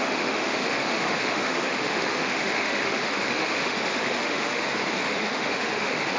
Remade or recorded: remade